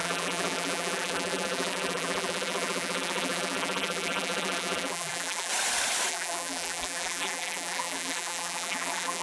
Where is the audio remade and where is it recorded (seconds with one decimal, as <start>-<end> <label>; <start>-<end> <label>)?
0.0-5.5 remade; 5.5-6.1 recorded; 6.1-9.2 remade